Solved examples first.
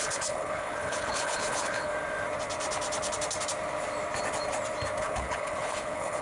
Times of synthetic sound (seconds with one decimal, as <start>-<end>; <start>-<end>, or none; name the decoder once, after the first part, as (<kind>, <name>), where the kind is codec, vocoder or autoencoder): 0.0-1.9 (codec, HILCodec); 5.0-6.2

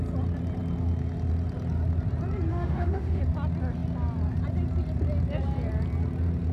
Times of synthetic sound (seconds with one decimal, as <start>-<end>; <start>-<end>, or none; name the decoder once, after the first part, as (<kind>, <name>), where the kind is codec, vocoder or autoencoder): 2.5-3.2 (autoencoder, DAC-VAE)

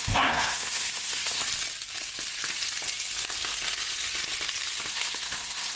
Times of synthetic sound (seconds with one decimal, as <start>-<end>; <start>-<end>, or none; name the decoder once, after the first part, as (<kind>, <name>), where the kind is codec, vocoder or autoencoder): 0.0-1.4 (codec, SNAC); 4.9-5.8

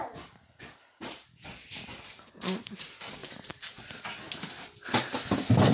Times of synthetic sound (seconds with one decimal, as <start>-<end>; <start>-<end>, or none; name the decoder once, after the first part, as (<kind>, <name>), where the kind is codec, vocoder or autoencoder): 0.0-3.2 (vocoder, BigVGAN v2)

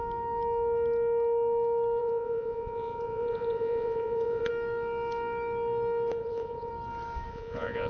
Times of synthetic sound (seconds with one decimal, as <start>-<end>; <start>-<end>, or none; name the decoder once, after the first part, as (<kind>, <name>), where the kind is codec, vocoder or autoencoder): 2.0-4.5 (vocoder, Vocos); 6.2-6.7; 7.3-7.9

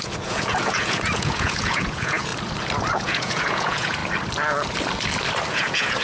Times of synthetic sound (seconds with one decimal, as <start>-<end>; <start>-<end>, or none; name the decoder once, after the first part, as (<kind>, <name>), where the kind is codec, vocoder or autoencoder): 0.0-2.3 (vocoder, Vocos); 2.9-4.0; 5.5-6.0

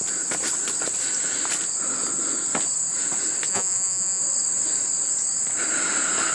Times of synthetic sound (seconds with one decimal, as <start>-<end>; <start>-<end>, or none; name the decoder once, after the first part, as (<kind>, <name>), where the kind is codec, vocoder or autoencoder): 3.5-4.2 (vocoder, Vocos)

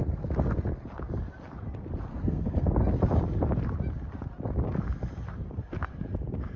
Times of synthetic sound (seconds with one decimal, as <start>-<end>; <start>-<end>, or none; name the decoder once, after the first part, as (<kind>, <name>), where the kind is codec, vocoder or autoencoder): 2.1-2.7 (codec, SNAC)